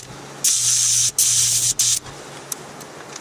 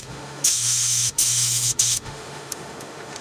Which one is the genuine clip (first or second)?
first